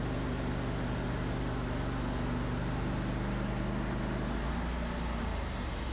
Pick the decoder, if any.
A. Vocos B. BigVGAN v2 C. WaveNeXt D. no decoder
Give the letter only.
D